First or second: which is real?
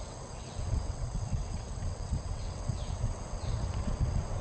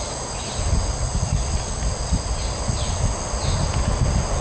second